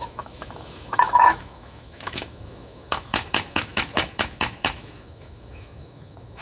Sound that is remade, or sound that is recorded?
remade